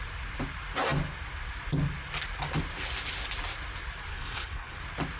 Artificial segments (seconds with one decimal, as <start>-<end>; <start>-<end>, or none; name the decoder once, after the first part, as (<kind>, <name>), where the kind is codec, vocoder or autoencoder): 4.1-4.8 (codec, HILCodec)

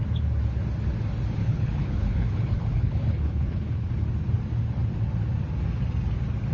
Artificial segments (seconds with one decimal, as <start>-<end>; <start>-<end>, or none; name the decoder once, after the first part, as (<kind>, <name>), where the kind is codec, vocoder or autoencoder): 1.4-3.9 (codec, HILCodec)

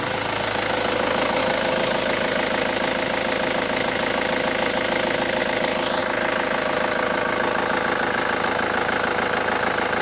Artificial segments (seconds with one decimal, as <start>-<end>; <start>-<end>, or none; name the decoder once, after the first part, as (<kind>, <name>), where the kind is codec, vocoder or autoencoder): none